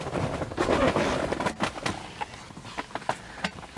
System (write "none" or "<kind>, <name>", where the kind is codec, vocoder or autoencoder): none